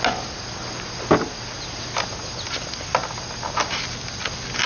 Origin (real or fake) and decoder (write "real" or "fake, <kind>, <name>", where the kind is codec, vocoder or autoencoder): real